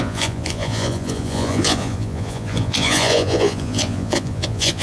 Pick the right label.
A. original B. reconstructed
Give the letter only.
B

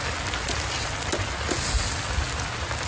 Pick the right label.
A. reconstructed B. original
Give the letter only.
B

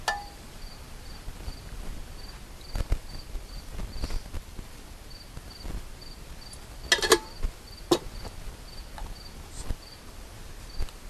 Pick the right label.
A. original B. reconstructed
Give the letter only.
A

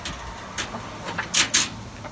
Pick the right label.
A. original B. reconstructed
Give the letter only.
A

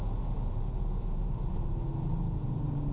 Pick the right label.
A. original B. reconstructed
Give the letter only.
B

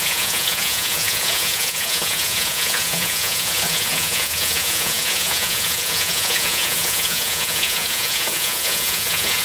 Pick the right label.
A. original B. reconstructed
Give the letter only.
B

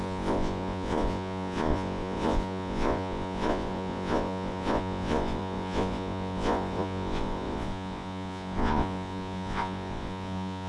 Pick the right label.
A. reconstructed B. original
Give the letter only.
A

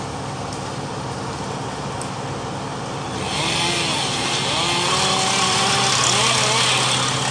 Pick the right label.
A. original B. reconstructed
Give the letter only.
A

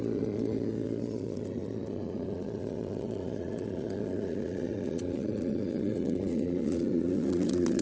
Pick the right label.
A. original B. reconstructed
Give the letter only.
B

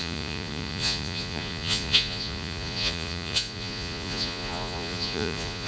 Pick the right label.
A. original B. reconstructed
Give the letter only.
B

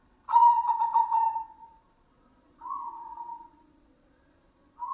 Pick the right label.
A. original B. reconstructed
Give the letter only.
B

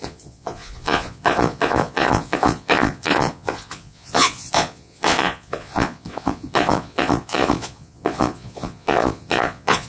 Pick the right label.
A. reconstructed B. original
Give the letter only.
A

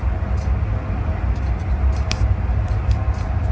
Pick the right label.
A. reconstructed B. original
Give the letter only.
B